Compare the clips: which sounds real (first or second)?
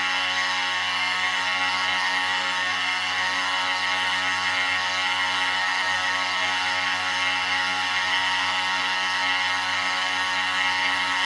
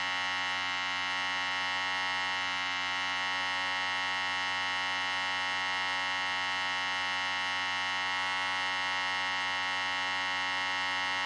second